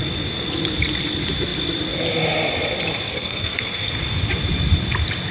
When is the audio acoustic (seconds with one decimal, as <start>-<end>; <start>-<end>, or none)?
0.0-3.1; 3.9-5.3